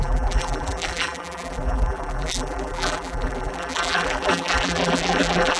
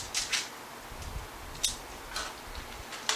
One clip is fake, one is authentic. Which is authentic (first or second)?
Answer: second